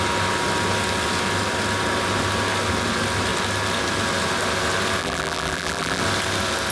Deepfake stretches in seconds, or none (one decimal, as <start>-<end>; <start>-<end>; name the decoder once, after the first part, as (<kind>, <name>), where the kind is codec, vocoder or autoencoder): 5.0-6.0 (vocoder, BigVGAN v2)